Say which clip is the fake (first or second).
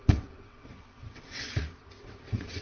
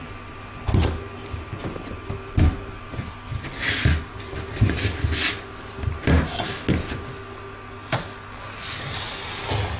first